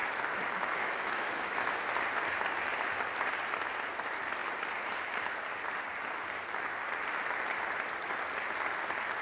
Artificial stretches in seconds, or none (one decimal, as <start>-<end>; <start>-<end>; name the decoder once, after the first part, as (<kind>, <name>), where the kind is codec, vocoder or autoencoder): 0.0-1.6 (autoencoder, DAC-VAE)

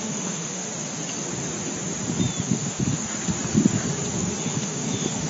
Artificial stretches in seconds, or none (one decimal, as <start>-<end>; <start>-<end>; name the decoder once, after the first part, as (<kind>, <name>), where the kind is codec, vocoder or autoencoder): 0.0-0.7 (autoencoder, DAC-VAE); 2.4-3.0; 4.4-5.3